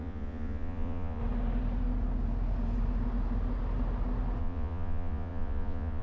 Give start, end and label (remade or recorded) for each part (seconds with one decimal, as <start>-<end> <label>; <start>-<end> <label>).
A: 0.0-1.2 remade; 1.2-4.4 recorded; 4.4-6.0 remade